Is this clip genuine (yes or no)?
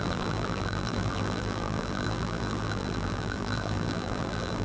no